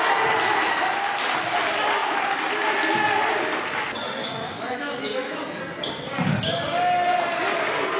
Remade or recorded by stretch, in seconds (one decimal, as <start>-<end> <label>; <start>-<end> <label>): 0.0-4.2 recorded; 4.2-5.6 remade; 5.6-8.0 recorded